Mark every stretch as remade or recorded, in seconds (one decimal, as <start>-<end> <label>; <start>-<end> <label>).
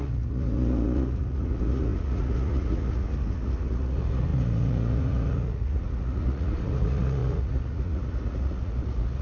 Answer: 0.0-9.2 remade